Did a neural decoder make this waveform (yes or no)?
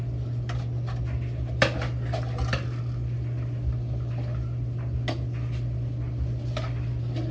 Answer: no